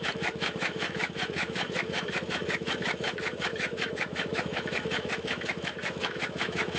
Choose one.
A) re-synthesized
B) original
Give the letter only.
A